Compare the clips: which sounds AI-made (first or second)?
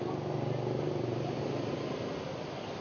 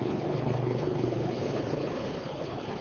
second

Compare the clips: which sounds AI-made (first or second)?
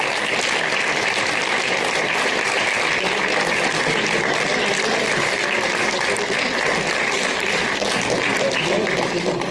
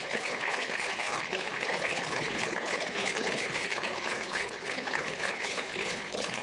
second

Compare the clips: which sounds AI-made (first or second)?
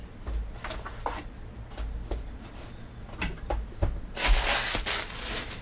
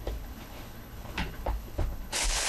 second